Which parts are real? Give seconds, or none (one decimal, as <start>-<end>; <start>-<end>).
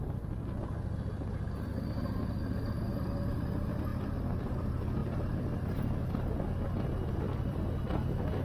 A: 0.0-8.4